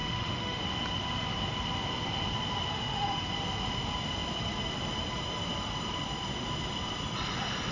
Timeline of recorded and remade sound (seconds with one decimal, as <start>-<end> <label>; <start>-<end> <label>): 0.0-0.6 remade; 0.6-2.7 recorded; 2.7-3.3 remade; 3.3-7.7 recorded